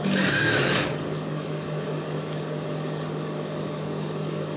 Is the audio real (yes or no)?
no